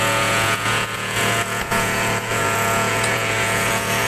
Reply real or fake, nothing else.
fake